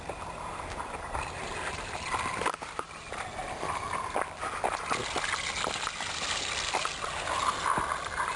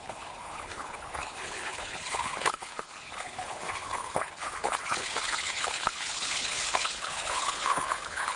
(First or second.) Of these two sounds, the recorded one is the first